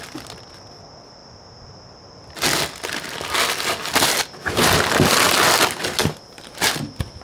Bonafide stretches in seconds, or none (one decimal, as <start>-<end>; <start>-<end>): 0.0-7.2